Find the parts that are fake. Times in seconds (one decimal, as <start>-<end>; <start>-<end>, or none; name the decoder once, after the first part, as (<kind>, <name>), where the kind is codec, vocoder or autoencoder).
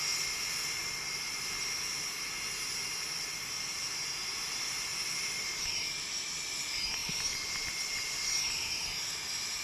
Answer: 0.8-1.6 (vocoder, BigVGAN v2); 4.4-5.7; 7.0-8.9